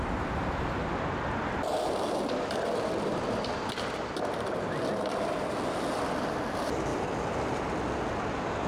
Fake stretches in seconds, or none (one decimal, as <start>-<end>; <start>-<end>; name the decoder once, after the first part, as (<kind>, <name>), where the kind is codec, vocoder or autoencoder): none